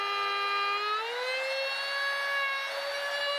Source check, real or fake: real